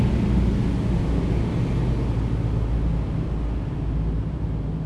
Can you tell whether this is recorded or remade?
recorded